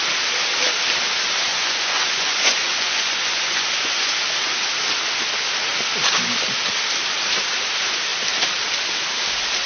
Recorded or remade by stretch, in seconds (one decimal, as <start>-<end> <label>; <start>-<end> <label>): 0.0-1.5 recorded; 1.5-4.1 remade; 4.1-9.7 recorded